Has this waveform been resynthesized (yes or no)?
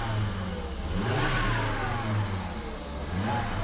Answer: no